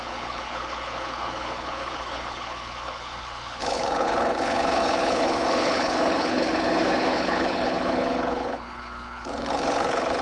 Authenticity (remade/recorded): remade